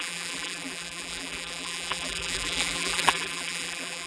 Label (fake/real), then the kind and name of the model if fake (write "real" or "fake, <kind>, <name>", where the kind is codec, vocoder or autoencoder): fake, vocoder, BigVGAN v2